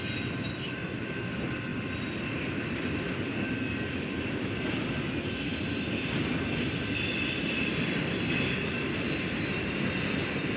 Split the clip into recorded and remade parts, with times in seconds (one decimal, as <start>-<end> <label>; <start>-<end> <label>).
0.0-10.6 recorded